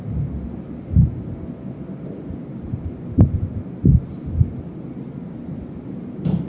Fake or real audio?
real